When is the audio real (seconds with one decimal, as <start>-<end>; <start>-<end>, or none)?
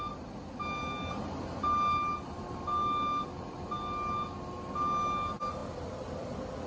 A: 0.0-6.7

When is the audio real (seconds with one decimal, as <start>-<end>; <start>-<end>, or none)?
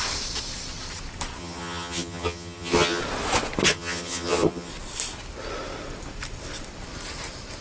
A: 0.0-1.4; 3.0-3.7; 4.7-7.6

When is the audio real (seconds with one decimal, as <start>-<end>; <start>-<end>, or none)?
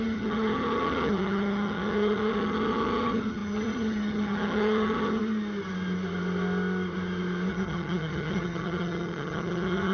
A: 5.2-7.5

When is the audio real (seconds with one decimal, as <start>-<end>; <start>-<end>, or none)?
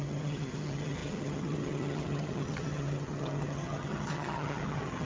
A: none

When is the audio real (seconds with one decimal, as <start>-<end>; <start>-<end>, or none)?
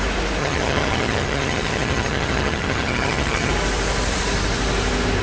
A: 0.0-0.4; 3.5-5.2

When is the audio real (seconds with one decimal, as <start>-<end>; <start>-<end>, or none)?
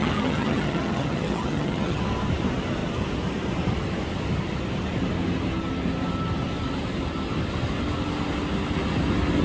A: 2.0-9.4